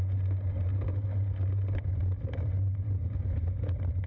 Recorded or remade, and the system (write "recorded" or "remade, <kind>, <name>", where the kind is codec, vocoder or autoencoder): recorded